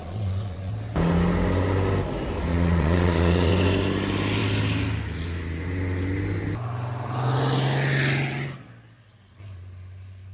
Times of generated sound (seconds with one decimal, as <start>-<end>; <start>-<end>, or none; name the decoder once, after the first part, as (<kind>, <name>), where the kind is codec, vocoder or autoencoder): 0.0-0.7 (vocoder, Vocos); 2.5-3.5